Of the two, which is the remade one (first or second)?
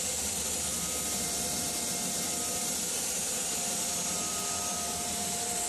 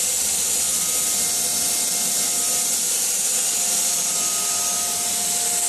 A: first